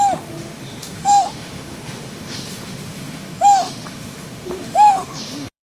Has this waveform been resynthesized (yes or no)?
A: yes